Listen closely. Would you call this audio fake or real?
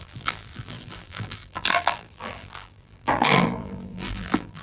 fake